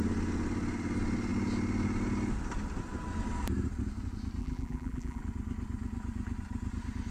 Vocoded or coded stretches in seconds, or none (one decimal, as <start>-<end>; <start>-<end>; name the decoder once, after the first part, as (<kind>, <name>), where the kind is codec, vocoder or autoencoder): 4.4-5.2 (vocoder, BigVGAN v2)